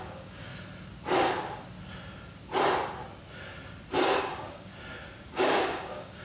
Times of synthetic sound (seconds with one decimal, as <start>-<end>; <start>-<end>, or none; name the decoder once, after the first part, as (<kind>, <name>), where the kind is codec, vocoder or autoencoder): 0.0-0.5 (codec, DAC); 4.2-4.7; 5.3-6.2